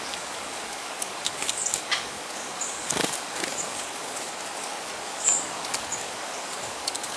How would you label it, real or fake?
fake